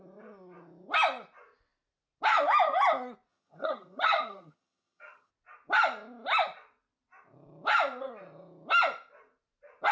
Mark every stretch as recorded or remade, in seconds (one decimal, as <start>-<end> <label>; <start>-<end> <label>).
0.0-3.3 recorded; 3.3-5.3 remade; 5.3-9.9 recorded